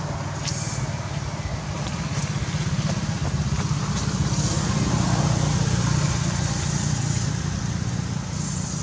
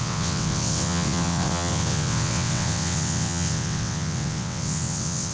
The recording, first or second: first